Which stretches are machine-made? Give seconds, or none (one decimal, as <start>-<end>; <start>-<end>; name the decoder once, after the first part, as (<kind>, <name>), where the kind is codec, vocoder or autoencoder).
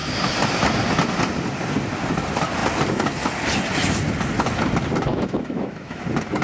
5.1-6.0 (autoencoder, DAC-VAE)